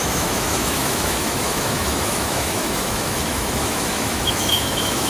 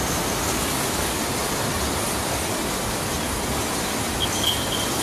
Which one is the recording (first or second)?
second